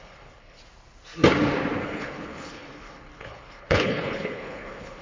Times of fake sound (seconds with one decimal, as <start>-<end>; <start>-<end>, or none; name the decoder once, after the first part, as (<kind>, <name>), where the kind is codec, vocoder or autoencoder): 0.0-0.6 (codec, HILCodec); 1.8-5.0